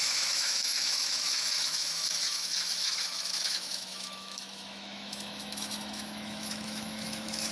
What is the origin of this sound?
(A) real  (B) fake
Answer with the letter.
B